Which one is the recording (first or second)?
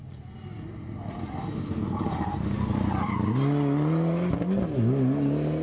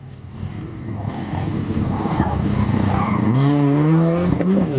first